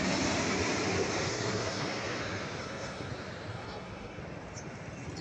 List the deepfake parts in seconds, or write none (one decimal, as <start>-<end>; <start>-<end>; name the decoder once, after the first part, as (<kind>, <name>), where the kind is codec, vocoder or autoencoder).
1.3-2.2 (codec, SNAC); 2.6-3.1; 3.5-4.2